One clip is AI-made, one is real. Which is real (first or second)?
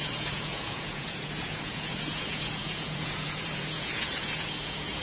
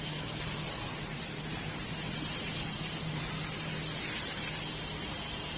second